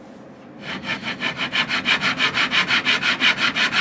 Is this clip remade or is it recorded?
recorded